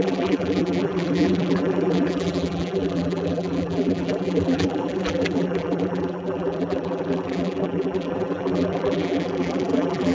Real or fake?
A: fake